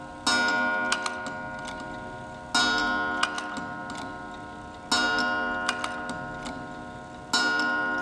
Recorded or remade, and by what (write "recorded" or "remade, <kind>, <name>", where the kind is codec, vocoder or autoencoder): recorded